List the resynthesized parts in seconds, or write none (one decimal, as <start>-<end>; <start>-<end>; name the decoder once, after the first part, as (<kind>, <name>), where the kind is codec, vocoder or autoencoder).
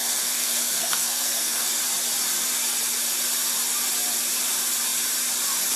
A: 0.0-1.8 (codec, SNAC)